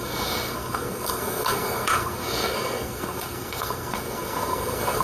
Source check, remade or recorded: remade